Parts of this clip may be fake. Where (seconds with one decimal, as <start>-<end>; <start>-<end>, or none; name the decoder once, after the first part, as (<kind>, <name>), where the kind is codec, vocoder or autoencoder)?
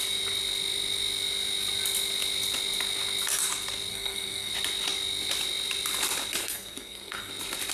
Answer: 3.9-4.5 (codec, SNAC); 6.4-7.3